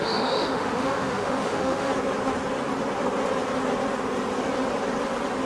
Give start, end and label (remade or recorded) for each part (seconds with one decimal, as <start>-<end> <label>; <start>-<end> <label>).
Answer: 0.0-1.9 remade; 1.9-5.5 recorded